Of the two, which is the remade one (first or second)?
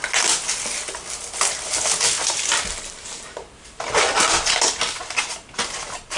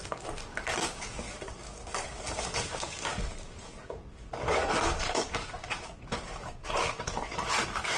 second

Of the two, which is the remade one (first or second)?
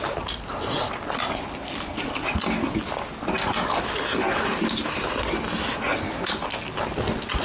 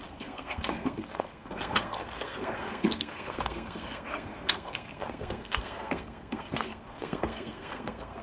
second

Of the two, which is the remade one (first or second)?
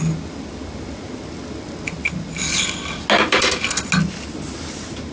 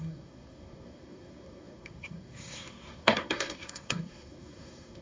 second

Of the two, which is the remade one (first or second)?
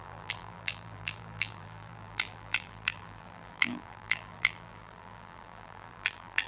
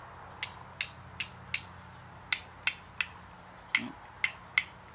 first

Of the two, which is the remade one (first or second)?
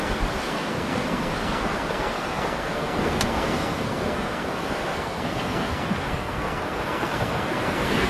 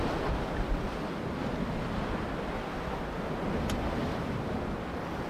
first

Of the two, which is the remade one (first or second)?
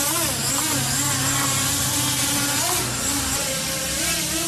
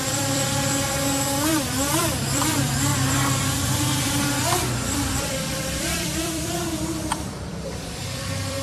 second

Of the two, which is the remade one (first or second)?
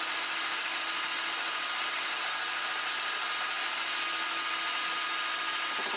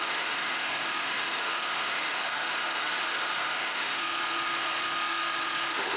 second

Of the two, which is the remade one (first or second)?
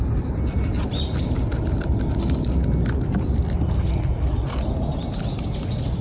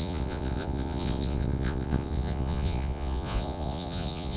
second